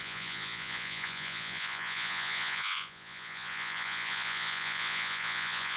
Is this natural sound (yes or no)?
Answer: no